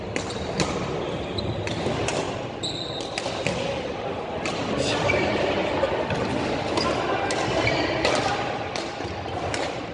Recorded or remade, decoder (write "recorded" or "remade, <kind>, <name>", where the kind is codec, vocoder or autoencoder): recorded